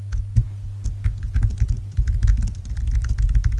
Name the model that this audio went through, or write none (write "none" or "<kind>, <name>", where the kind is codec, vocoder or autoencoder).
none